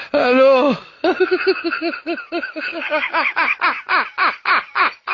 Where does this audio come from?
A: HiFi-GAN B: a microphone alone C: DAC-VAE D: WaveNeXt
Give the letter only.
B